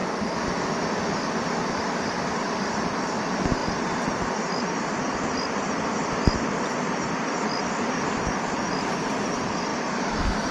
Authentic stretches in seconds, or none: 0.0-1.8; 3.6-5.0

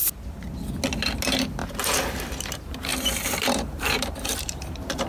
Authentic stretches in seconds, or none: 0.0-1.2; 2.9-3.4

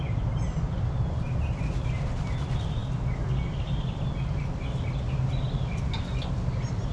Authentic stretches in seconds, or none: 0.0-6.9

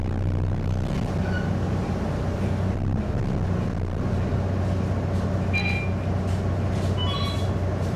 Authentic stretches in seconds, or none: 0.0-8.0

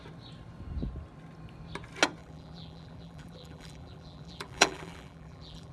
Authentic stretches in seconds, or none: 0.0-2.2

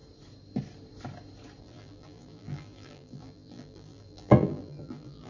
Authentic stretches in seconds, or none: 0.0-1.6

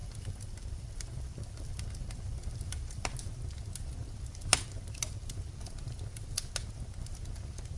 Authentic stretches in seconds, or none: 3.2-7.8